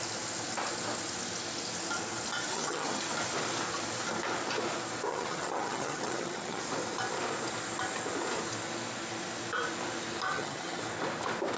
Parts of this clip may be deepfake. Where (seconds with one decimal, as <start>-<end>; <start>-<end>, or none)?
2.5-3.0; 5.1-6.6; 10.3-10.8